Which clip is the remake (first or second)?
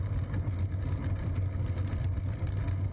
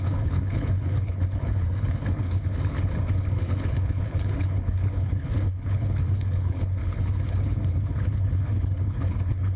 second